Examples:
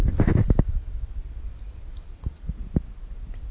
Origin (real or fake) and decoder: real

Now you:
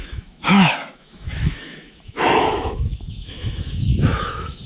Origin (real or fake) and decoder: fake, autoencoder, DAC-VAE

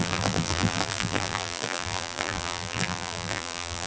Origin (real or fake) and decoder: fake, vocoder, BigVGAN v2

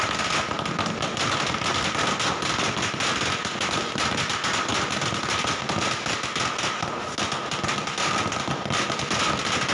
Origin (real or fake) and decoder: real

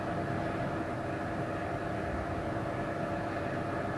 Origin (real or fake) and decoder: real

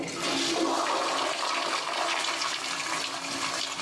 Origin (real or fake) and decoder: real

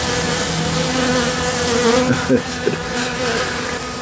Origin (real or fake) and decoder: real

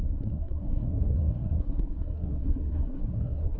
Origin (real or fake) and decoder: fake, codec, SNAC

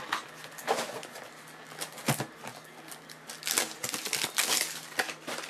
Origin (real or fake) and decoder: real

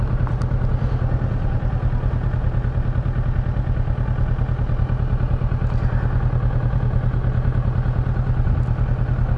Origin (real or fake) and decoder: real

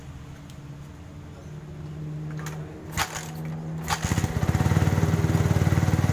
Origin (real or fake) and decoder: real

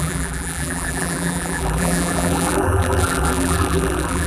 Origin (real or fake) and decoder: fake, vocoder, BigVGAN v2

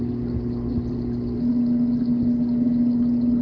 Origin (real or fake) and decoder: real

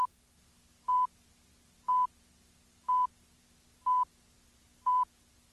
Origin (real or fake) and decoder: real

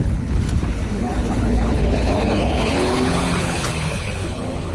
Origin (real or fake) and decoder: fake, codec, HILCodec